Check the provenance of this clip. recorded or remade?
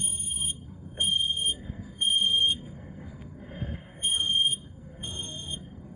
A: remade